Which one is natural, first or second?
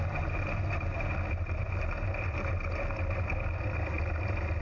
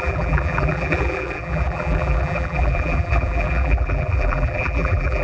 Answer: first